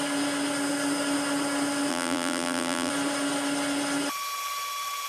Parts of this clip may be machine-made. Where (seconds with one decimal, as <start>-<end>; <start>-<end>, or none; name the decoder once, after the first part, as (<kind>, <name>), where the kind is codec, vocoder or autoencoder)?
1.9-2.9 (vocoder, BigVGAN v2)

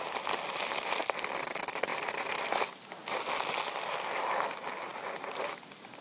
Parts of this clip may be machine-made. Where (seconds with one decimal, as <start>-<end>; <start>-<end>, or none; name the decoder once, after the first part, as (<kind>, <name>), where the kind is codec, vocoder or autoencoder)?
none

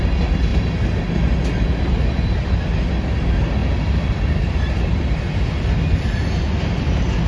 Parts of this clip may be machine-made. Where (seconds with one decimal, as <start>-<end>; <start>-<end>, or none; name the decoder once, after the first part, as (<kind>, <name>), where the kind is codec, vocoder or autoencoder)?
3.6-5.3 (vocoder, BigVGAN v2)